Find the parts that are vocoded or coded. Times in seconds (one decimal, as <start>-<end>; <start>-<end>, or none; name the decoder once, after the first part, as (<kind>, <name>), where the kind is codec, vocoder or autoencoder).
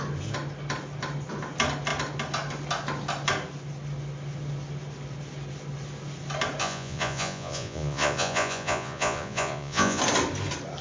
6.6-10.0 (vocoder, Vocos)